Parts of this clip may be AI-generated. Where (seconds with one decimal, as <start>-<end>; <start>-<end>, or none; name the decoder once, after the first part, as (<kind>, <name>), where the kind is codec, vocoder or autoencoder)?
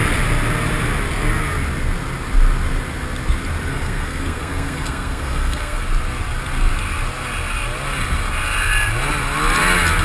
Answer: 3.7-5.8 (codec, SNAC)